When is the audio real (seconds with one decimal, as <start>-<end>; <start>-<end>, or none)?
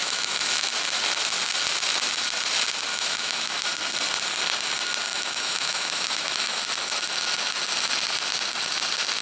0.7-2.9; 3.7-5.1; 6.6-9.2